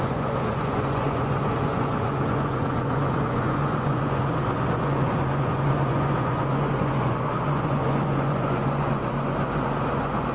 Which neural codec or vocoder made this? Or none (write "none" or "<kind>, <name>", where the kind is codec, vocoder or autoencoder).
vocoder, Vocos